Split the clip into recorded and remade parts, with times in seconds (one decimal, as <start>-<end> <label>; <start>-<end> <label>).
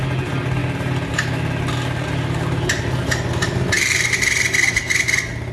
0.0-5.5 recorded